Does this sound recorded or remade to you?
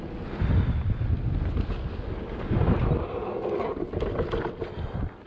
recorded